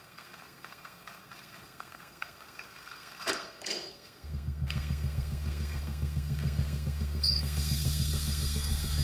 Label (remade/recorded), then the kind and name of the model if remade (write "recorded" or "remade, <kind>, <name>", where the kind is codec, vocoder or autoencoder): remade, codec, SNAC